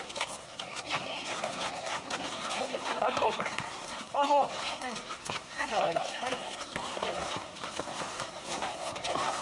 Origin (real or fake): fake